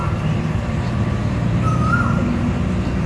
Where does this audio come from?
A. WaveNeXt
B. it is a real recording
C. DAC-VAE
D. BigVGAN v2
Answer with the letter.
D